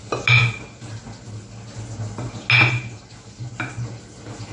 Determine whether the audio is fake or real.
real